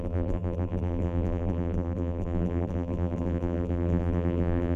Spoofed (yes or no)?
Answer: yes